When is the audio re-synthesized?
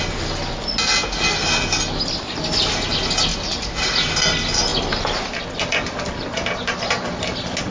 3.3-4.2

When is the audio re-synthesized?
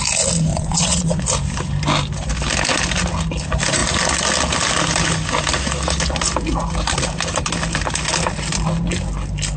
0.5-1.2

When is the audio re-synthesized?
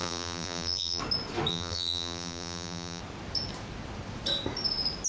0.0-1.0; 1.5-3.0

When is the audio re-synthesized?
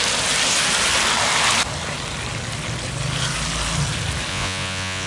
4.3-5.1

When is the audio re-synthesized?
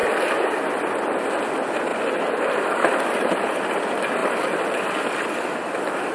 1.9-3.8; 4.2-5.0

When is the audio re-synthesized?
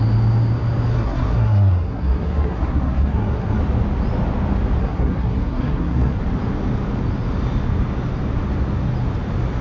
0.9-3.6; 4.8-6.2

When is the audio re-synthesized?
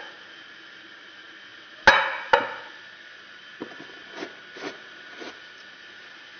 none